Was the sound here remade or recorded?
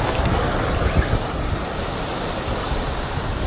recorded